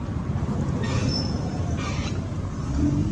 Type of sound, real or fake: real